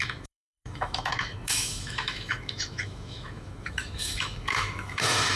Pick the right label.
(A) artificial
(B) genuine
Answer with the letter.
A